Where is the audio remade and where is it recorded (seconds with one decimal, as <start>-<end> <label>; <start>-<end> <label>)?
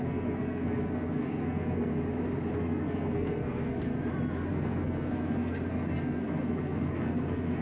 0.0-1.9 remade; 1.9-2.5 recorded; 2.5-3.9 remade; 3.9-4.5 recorded; 4.5-7.6 remade